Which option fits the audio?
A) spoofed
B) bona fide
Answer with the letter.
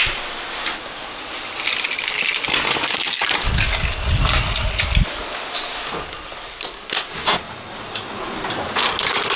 B